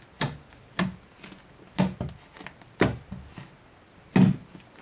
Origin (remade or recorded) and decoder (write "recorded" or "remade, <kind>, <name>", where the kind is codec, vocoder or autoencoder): recorded